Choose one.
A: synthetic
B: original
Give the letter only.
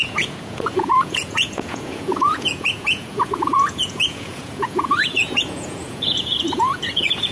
A